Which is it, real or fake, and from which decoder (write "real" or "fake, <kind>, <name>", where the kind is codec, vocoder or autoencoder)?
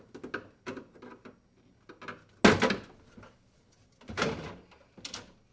real